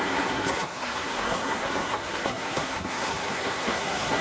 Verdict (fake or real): fake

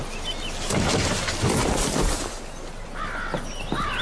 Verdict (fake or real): real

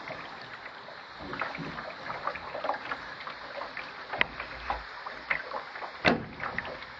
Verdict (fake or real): real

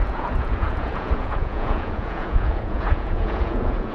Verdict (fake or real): fake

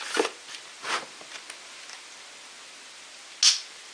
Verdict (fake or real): real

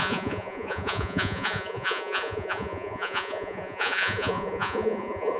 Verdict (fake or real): fake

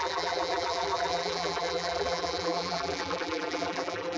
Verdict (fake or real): fake